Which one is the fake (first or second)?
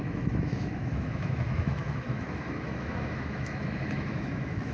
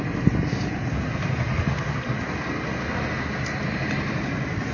first